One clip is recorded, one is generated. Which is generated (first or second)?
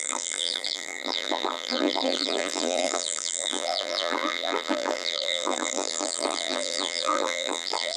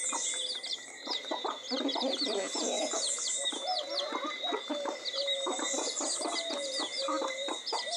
first